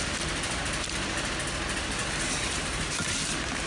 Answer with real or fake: real